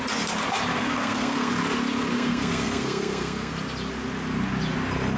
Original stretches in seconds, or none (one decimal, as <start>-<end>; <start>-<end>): 0.0-0.7; 1.5-2.1; 3.5-5.2